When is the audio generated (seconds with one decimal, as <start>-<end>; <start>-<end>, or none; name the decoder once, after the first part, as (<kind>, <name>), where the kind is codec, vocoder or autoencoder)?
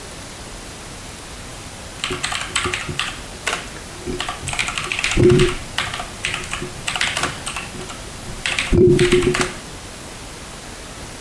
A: 1.5-3.2 (vocoder, BigVGAN v2); 4.6-9.6